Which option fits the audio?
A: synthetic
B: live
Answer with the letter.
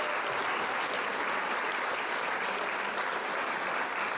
B